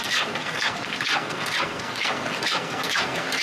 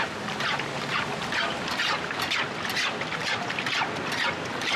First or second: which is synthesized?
first